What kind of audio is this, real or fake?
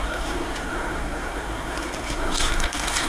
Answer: fake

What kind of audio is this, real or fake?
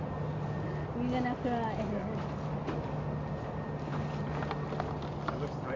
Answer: fake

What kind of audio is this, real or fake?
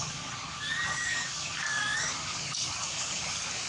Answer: fake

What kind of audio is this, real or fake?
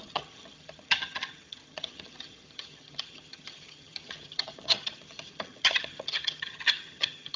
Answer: fake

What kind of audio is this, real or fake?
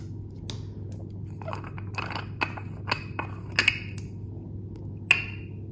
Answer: real